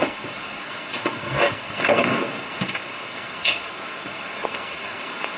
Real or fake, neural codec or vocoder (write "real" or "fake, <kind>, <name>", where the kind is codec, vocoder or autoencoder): fake, codec, SNAC